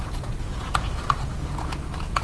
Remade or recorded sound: remade